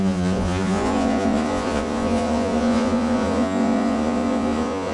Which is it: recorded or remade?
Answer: remade